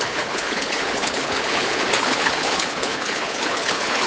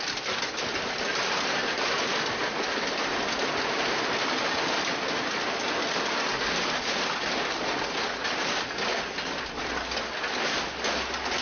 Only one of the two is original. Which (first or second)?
second